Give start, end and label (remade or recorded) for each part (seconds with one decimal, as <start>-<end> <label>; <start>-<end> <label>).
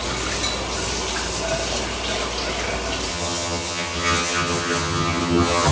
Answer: 0.0-3.1 recorded; 3.1-5.7 remade